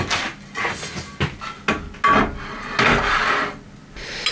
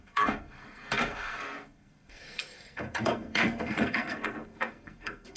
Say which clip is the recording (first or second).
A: first